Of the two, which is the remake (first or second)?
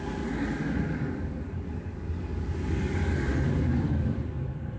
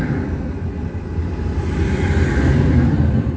first